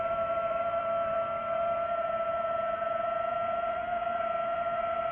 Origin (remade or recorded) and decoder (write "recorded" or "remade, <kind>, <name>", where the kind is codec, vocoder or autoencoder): remade, vocoder, BigVGAN v2